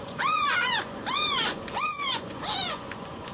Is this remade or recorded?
remade